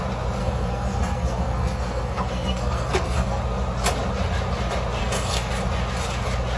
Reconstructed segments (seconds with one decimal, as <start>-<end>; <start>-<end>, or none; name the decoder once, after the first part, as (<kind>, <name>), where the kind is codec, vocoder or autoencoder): 0.4-3.4 (codec, SNAC); 5.0-5.5